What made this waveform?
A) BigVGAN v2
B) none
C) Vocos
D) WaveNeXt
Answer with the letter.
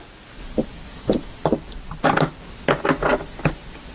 B